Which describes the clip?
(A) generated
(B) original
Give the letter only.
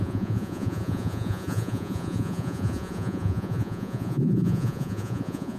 A